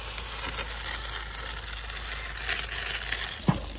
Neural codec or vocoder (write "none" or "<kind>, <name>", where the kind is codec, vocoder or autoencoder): none